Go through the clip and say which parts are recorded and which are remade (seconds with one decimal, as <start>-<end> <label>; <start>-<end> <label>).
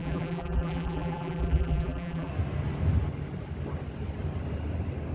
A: 0.0-2.3 remade; 2.3-5.1 recorded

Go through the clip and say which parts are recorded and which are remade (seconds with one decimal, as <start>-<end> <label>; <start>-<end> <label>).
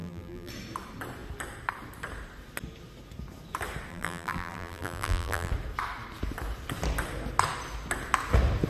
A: 0.0-0.5 remade; 0.5-3.9 recorded; 3.9-5.5 remade; 5.5-8.7 recorded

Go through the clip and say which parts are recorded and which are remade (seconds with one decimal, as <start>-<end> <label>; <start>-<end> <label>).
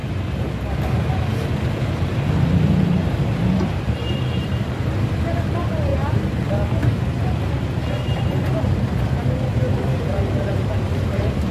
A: 0.0-5.9 remade; 5.9-8.1 recorded; 8.1-11.5 remade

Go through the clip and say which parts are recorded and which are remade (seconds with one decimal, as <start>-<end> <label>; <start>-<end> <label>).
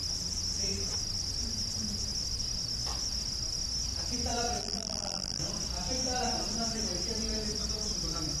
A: 0.0-4.6 recorded; 4.6-5.4 remade; 5.4-8.4 recorded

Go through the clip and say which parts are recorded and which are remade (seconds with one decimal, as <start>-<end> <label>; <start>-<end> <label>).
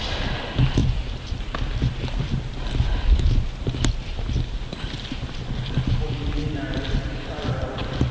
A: 0.0-8.1 recorded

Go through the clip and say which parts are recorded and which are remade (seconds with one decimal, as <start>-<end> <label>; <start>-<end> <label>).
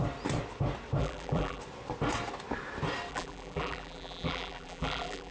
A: 0.0-1.0 recorded; 1.0-1.6 remade; 1.6-3.1 recorded; 3.1-5.3 remade